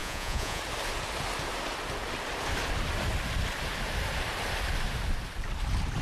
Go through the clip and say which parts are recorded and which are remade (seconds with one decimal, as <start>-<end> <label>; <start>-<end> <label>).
0.0-0.6 remade; 0.6-6.0 recorded